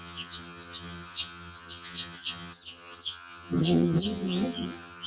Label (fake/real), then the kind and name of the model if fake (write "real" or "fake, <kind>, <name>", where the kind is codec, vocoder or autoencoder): fake, vocoder, HiFi-GAN